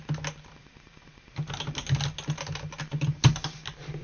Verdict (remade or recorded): recorded